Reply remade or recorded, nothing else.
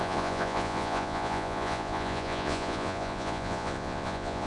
remade